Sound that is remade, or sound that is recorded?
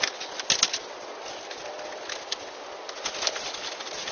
recorded